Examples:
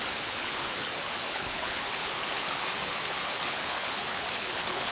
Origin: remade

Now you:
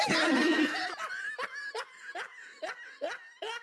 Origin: recorded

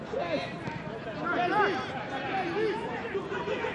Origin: recorded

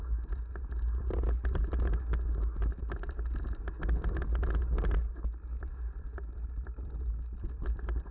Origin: recorded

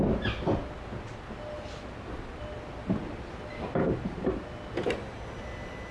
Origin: recorded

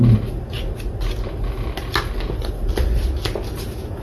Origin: recorded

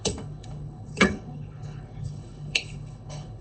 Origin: remade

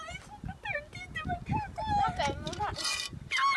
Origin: recorded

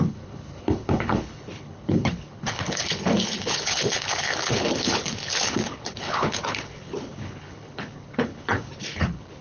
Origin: remade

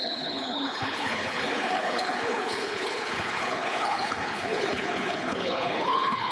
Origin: remade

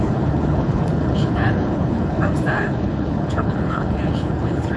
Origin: remade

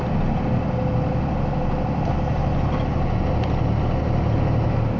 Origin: recorded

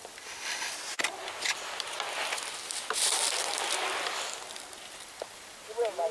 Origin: recorded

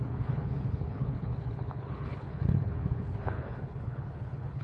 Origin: remade